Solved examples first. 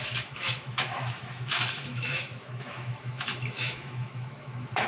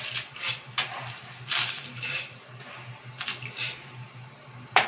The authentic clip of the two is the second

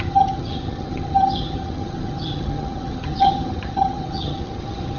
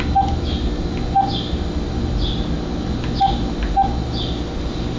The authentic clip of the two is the second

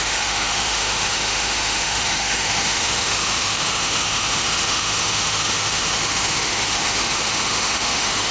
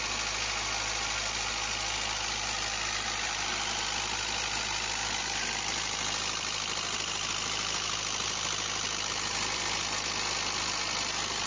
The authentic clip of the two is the second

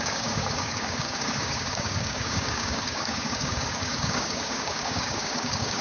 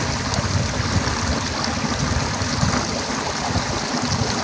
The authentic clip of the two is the second